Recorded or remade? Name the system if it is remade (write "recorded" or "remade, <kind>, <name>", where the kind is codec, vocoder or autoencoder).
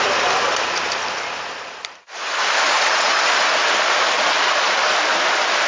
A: recorded